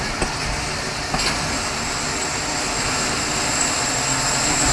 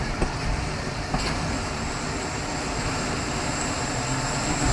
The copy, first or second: second